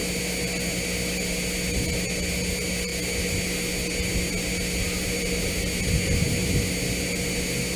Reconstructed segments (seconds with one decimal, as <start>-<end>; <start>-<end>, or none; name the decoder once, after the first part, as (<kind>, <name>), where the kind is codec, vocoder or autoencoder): none